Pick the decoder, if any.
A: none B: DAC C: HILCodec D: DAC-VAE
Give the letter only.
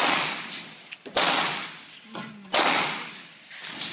A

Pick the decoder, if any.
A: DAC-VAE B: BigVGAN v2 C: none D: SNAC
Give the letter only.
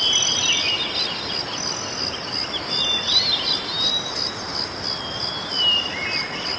C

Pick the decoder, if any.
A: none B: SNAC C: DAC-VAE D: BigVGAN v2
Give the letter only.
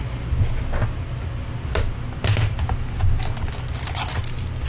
A